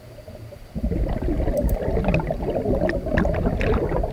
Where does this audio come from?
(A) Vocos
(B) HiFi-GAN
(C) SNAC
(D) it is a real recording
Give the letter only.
D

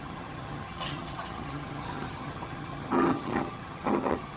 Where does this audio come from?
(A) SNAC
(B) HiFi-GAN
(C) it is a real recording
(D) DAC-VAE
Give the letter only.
B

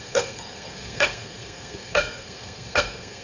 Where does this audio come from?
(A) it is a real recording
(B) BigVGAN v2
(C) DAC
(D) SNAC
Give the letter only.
D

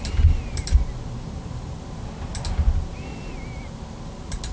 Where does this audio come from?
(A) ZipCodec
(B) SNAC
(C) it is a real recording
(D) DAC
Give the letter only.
C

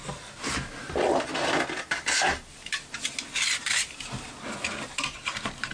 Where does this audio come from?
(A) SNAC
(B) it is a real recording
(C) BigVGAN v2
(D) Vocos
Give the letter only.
B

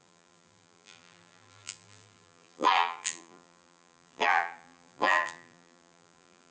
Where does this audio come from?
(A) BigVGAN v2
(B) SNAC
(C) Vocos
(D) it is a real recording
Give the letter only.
A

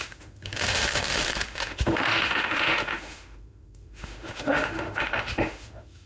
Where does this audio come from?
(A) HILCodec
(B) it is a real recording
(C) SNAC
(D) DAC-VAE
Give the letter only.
D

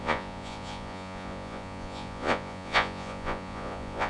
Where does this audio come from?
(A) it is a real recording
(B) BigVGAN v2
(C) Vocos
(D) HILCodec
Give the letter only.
C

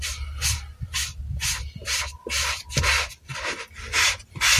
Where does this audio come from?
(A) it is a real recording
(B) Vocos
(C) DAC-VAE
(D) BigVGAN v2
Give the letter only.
A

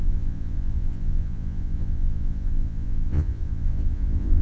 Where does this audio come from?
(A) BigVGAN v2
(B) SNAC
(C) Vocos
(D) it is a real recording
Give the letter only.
C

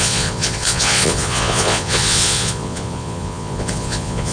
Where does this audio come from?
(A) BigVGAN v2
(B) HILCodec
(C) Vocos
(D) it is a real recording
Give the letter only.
C